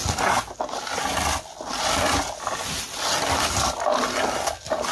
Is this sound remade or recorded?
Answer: recorded